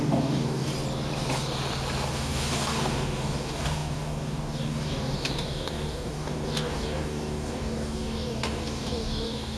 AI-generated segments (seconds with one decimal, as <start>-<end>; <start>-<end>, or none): 0.0-0.7; 2.1-9.6